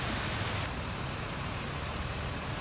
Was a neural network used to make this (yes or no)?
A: no